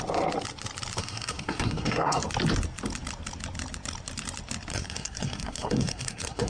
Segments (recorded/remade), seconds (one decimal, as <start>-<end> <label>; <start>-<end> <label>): 0.0-1.0 recorded; 1.0-2.2 remade; 2.2-4.7 recorded; 4.7-6.5 remade